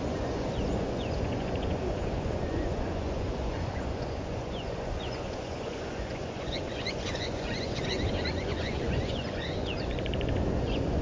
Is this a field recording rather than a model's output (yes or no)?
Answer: no